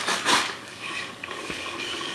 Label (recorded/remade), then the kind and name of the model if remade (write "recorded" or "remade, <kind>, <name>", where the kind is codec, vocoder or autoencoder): remade, codec, DAC